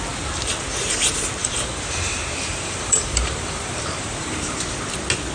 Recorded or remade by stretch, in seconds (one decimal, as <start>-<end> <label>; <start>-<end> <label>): 0.0-1.4 recorded; 1.4-4.6 remade; 4.6-5.3 recorded